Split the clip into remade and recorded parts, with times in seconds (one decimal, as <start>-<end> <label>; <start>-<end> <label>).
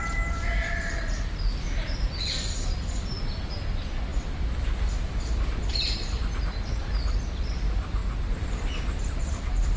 0.0-8.0 remade; 8.0-9.0 recorded; 9.0-9.8 remade